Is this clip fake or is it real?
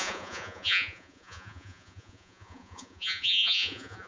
fake